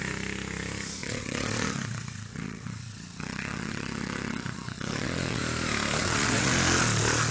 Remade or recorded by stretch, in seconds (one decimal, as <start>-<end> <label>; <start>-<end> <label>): 0.0-1.0 recorded; 1.0-5.4 remade; 5.4-6.0 recorded; 6.0-6.5 remade; 6.5-7.3 recorded